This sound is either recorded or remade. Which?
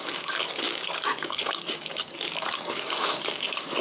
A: remade